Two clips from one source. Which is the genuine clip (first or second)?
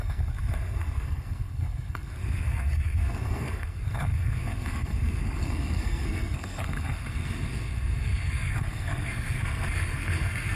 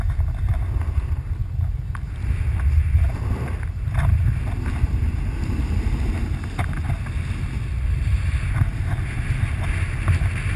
second